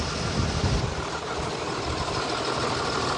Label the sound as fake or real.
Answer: real